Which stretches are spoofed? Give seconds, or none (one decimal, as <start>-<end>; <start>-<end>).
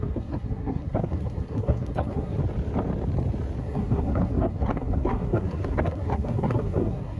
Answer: 0.0-2.4; 3.6-7.2